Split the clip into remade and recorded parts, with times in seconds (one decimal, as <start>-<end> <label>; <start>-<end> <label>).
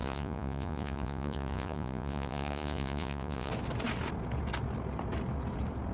0.0-3.5 remade; 3.5-5.9 recorded